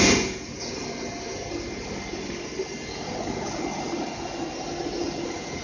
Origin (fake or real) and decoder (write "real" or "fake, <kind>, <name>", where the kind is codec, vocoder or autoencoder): real